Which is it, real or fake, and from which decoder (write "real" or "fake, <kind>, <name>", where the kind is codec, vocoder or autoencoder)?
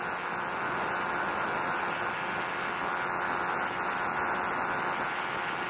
real